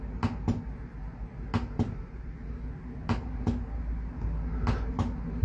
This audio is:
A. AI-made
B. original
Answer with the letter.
B